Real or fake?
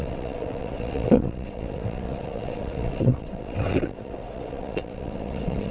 fake